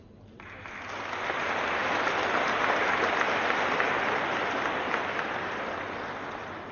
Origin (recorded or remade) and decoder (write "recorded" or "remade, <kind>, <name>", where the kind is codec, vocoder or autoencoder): recorded